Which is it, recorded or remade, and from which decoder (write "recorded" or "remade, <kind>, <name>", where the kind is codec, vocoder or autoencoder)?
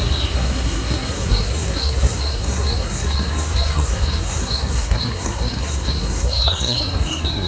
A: remade, codec, SNAC